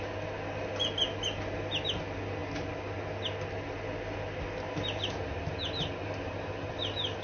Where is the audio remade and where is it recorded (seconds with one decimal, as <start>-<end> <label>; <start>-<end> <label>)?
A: 0.0-7.2 recorded